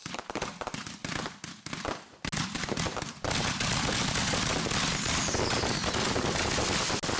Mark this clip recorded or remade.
recorded